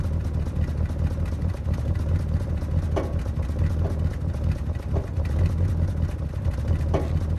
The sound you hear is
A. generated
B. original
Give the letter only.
B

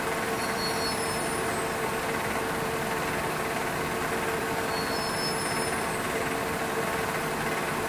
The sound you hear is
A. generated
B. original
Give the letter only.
B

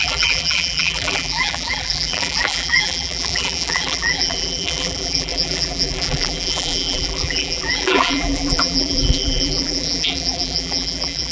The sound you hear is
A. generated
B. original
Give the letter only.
A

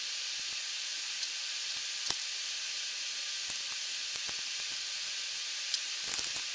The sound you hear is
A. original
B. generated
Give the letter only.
A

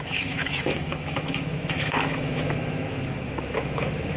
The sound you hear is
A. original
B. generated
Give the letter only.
B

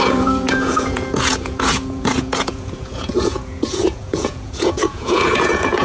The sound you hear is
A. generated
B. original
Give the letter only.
A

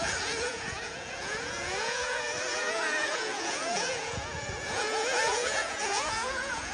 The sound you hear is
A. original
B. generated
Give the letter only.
B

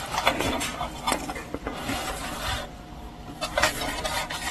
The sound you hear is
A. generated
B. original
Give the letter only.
B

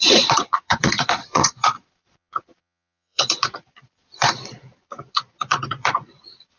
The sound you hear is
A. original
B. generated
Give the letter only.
B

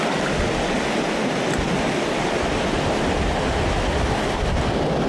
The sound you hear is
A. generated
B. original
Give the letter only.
B